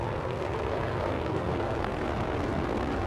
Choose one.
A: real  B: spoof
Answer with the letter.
B